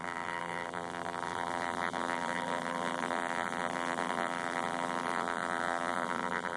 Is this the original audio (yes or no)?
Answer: no